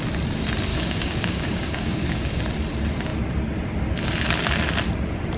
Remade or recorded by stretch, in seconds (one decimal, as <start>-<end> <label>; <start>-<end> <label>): 0.0-0.7 recorded; 0.7-2.4 remade; 2.4-5.4 recorded